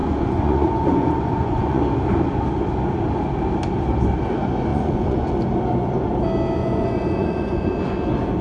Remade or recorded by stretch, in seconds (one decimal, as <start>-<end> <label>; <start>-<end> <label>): 0.0-1.8 remade; 1.8-4.7 recorded; 4.7-5.3 remade; 5.3-6.6 recorded; 6.6-7.8 remade; 7.8-8.4 recorded